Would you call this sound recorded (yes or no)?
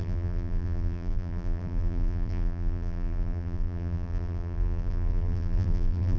no